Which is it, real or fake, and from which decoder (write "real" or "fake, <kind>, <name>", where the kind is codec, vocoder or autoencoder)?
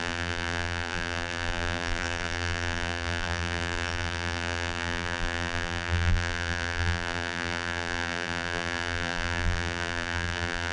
fake, vocoder, BigVGAN v2